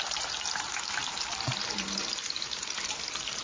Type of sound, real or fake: fake